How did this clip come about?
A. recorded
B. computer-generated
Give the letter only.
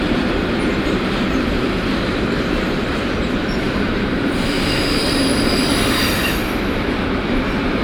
B